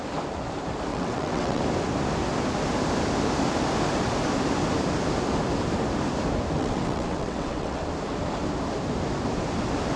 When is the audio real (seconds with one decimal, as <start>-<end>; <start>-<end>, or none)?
0.0-0.9; 1.6-6.6; 7.8-10.0